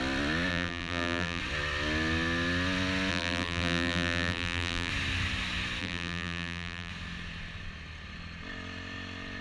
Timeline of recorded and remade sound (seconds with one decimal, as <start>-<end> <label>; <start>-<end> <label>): 0.0-0.5 recorded; 0.5-1.4 remade; 1.4-3.1 recorded; 3.1-4.9 remade; 4.9-5.8 recorded; 5.8-6.9 remade; 6.9-9.4 recorded